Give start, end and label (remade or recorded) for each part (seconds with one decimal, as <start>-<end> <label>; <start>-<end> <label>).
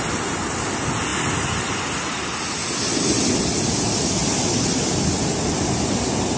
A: 0.0-4.2 recorded; 4.2-4.8 remade; 4.8-6.4 recorded